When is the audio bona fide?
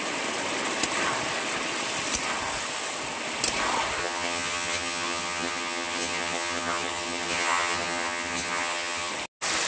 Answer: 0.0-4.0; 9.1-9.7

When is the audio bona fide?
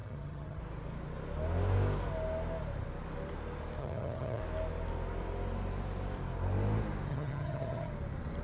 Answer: 0.6-3.8; 4.4-7.1; 7.9-8.4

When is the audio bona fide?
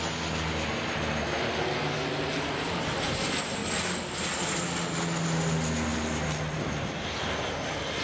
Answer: 0.0-8.0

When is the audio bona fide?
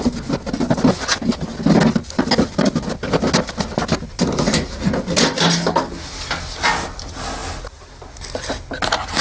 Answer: 0.0-9.2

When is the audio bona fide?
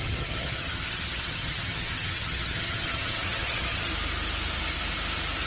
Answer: 3.9-5.5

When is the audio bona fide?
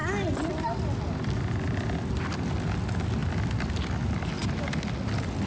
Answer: 0.0-5.5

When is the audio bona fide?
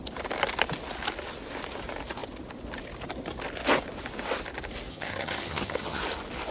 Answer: 0.0-4.9; 6.0-6.5